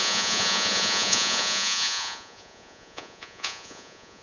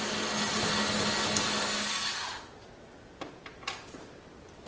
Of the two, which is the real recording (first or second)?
second